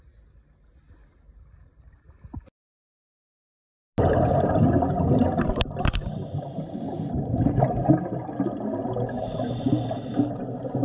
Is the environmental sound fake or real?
real